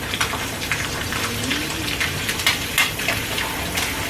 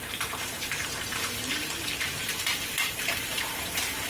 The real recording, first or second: first